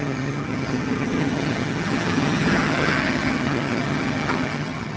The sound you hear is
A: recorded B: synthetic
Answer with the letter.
B